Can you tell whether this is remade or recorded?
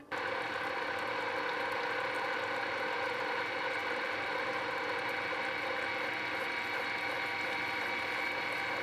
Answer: recorded